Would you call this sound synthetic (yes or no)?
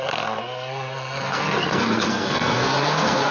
yes